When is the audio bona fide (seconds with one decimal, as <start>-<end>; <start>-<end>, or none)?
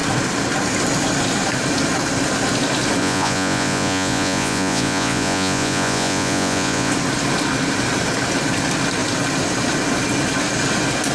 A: 0.0-3.0; 6.9-11.1